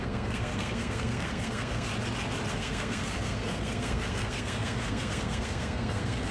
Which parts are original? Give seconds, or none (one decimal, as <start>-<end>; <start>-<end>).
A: 1.9-2.5